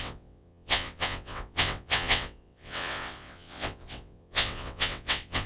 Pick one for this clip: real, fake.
fake